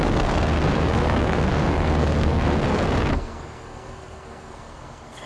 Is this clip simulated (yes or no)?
yes